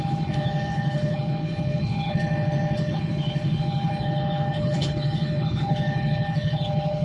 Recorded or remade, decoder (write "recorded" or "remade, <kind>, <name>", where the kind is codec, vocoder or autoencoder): remade, codec, HILCodec